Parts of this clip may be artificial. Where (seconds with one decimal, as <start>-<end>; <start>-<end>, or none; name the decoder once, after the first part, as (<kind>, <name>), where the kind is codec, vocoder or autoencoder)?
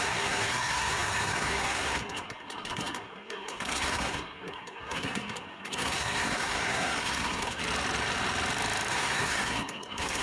0.0-7.6 (codec, SNAC); 8.9-10.2